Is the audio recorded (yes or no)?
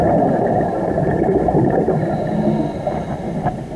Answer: yes